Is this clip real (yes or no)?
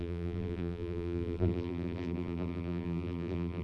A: no